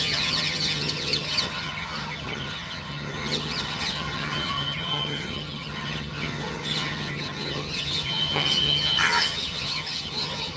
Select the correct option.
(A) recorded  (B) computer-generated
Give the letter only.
B